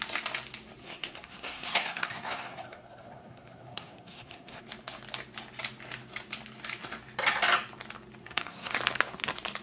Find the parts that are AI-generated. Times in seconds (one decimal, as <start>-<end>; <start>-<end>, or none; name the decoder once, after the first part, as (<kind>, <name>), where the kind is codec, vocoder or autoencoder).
0.8-4.6 (codec, SNAC); 8.2-8.7